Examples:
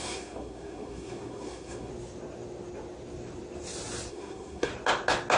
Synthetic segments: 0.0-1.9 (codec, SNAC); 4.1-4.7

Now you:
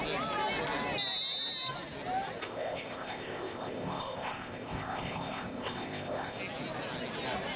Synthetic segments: 2.4-6.4 (codec, ZipCodec)